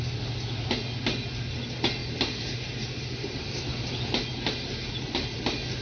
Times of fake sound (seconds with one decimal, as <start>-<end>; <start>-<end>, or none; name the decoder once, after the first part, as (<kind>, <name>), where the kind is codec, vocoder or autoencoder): none